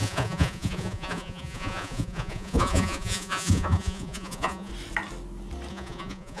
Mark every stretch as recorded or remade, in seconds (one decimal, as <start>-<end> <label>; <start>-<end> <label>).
0.0-4.7 remade; 4.7-5.7 recorded; 5.7-6.4 remade